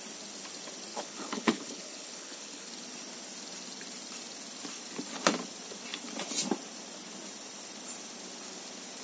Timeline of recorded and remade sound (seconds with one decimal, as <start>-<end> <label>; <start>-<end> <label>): 0.0-0.9 recorded; 0.9-2.7 remade; 2.7-9.0 recorded